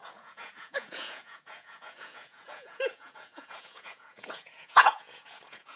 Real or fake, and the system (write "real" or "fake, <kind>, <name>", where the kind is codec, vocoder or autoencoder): fake, vocoder, Vocos